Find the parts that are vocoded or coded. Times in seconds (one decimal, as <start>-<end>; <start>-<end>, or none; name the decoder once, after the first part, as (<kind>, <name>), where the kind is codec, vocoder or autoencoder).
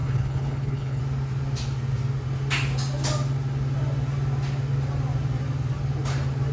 0.0-1.0 (codec, HILCodec)